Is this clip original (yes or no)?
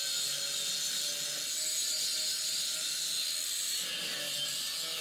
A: yes